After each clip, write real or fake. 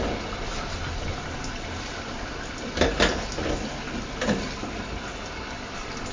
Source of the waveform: real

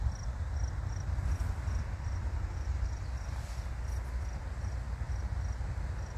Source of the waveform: real